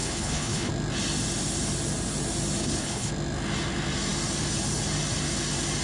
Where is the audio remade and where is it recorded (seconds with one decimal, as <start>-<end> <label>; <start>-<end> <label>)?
0.0-0.7 remade; 0.7-2.6 recorded; 2.6-3.1 remade; 3.1-5.8 recorded